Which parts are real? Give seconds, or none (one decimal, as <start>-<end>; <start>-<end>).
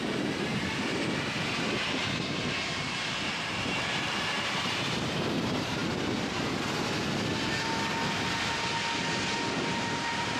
5.8-9.7